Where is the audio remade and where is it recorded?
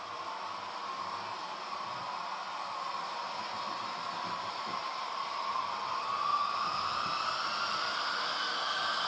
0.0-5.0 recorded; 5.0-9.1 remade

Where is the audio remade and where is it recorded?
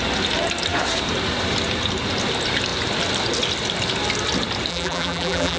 0.0-4.7 recorded; 4.7-5.6 remade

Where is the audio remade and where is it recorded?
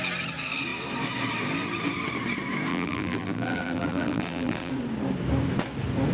0.0-2.7 recorded; 2.7-4.7 remade; 4.7-6.1 recorded